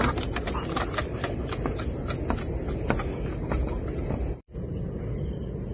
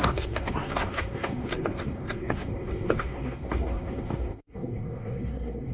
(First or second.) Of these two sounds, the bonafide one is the first